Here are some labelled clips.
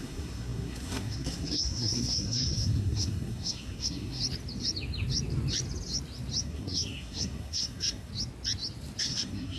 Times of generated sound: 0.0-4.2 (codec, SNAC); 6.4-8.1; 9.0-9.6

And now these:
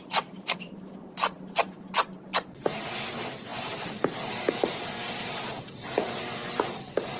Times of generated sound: 0.0-7.2 (vocoder, BigVGAN v2)

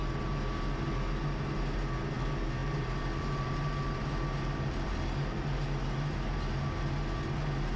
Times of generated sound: none

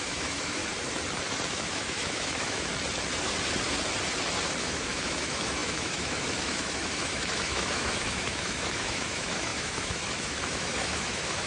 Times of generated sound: 0.0-0.6 (autoencoder, DAC-VAE); 1.5-2.7; 4.6-11.5

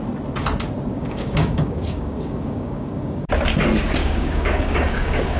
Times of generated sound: 0.9-3.3 (codec, DAC); 4.0-5.4

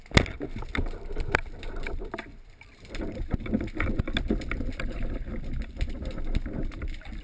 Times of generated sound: 2.3-3.0 (vocoder, BigVGAN v2)